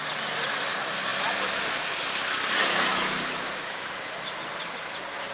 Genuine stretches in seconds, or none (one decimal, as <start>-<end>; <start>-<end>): 0.0-2.9; 4.3-5.3